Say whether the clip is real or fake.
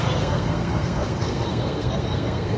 fake